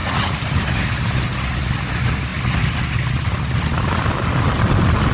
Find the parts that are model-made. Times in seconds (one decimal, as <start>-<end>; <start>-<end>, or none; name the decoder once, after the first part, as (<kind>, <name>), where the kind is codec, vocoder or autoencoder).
0.0-0.8 (vocoder, BigVGAN v2)